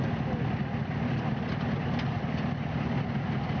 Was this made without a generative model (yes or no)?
yes